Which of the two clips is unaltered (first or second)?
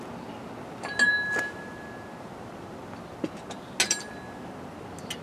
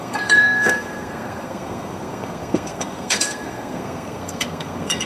first